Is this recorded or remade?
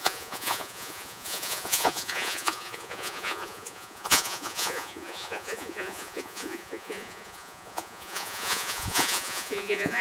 remade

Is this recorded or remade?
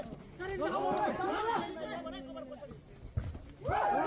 recorded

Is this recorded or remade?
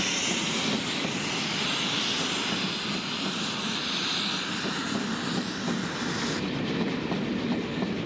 recorded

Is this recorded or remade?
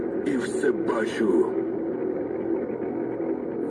recorded